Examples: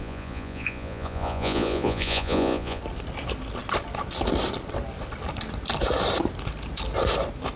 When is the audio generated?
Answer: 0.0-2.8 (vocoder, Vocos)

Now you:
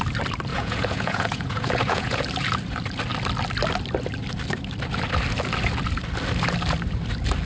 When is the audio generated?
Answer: 0.5-2.2 (vocoder, Vocos)

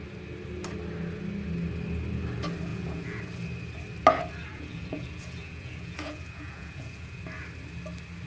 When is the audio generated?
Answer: 2.7-3.2 (vocoder, Vocos); 4.5-7.2

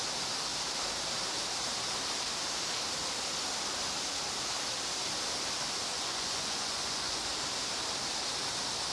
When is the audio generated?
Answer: 5.9-7.2 (vocoder, Vocos)

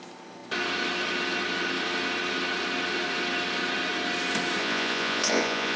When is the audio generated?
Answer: 4.6-5.8 (vocoder, Vocos)

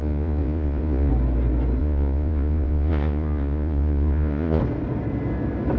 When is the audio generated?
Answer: 0.0-1.1 (vocoder, Vocos); 1.8-4.6

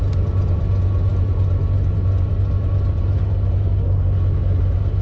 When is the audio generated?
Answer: none

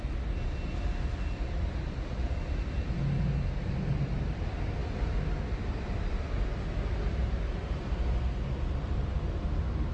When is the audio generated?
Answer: none